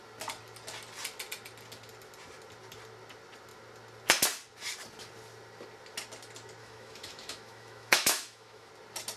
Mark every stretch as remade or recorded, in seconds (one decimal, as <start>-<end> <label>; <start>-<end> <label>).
0.0-6.6 recorded; 6.6-8.7 remade; 8.7-9.2 recorded